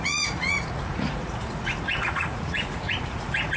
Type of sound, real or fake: fake